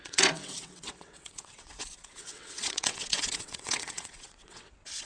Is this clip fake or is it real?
fake